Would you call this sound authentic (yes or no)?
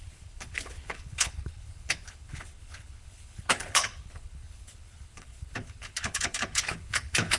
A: no